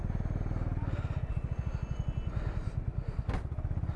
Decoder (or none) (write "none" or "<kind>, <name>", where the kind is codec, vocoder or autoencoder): none